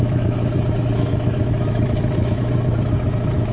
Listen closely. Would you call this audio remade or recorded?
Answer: remade